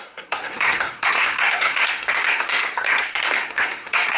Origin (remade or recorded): remade